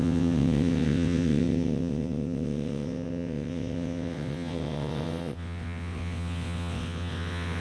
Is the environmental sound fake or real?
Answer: fake